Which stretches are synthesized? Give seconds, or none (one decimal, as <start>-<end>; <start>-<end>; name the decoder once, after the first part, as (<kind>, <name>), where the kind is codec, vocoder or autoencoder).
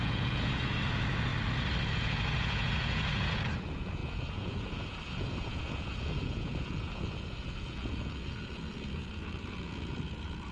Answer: 0.0-1.3 (vocoder, Vocos); 1.9-10.5